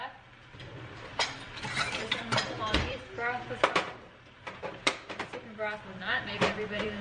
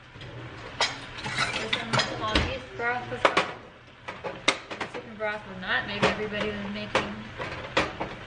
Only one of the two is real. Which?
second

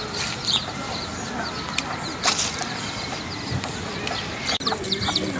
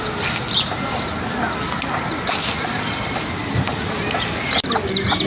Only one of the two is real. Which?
second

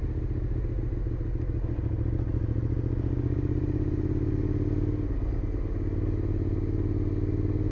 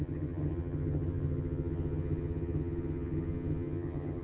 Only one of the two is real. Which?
first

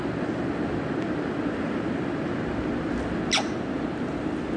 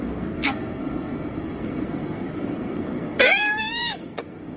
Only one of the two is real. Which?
first